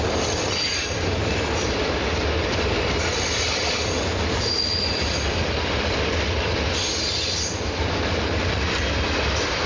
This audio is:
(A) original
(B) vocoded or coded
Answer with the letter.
A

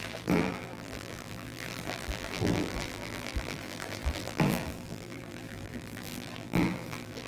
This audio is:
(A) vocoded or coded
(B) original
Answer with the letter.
A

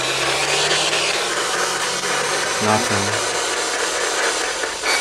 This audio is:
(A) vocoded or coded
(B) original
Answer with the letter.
B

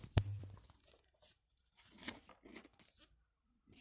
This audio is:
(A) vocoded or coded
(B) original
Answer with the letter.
A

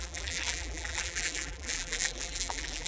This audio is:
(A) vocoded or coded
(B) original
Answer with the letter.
A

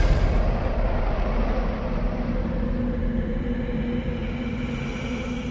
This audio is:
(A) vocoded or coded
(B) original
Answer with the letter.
B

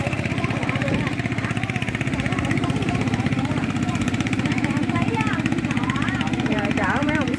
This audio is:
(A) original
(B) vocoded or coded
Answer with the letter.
B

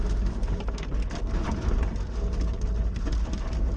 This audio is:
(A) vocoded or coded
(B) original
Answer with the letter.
B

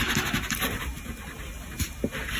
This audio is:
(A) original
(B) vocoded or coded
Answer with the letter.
A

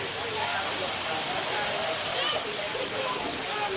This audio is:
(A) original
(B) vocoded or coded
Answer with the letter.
A